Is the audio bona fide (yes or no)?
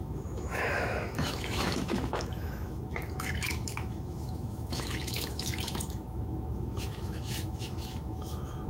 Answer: no